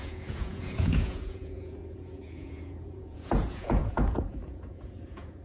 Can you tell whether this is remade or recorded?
remade